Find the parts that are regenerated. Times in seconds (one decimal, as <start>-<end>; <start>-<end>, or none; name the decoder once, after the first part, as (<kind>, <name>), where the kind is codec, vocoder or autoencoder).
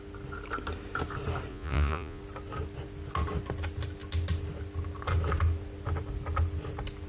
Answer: 1.5-2.2 (vocoder, Vocos)